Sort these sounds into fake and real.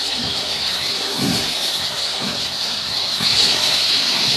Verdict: fake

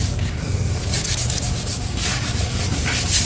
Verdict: fake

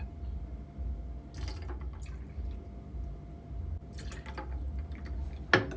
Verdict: real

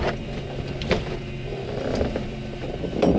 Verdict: fake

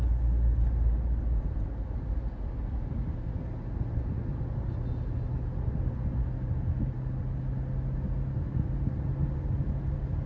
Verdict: real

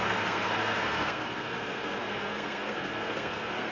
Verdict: fake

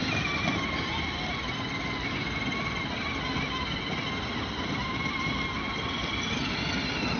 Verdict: real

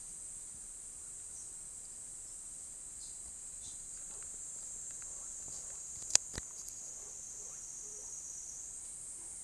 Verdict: fake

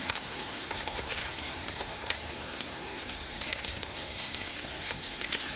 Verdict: fake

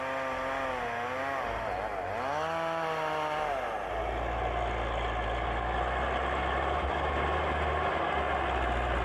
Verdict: real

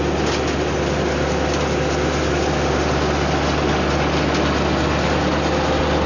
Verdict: real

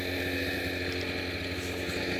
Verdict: real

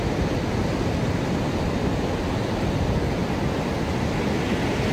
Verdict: real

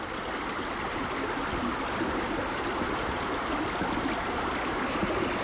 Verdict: real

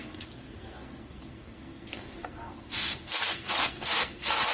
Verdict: fake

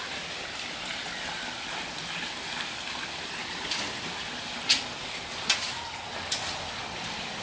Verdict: real